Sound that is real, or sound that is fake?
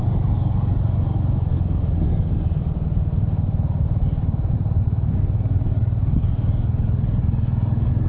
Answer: real